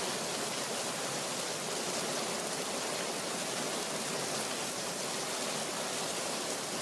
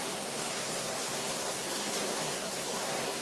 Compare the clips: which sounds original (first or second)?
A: first